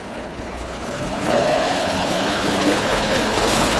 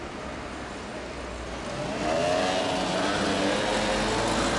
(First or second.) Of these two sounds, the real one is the second